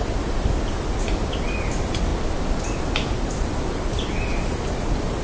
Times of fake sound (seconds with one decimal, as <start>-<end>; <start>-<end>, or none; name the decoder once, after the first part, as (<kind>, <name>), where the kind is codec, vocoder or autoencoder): none

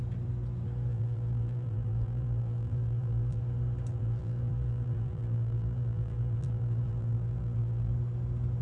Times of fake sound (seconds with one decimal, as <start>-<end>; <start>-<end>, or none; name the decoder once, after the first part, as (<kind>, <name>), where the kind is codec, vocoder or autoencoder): 0.9-3.4 (vocoder, BigVGAN v2); 3.9-7.9

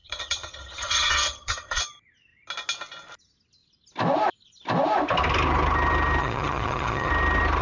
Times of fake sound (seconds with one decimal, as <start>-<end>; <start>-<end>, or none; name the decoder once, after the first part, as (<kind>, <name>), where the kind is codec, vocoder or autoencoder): 0.0-1.8 (vocoder, HiFi-GAN); 6.2-7.1

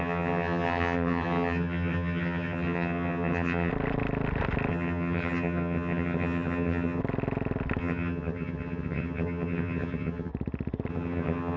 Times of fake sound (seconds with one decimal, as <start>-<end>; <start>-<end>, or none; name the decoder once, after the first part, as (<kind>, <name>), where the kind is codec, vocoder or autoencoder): 0.0-3.7 (vocoder, HiFi-GAN); 4.7-7.0; 7.8-10.3; 10.9-11.6